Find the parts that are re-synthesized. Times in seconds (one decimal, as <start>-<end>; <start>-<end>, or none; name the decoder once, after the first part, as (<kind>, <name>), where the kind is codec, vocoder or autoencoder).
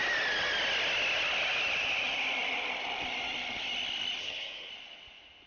4.2-4.7 (codec, SNAC)